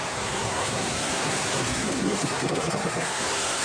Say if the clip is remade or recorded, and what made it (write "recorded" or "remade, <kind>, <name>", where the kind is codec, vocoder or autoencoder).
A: remade, codec, SNAC